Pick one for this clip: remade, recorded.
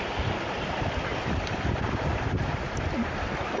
recorded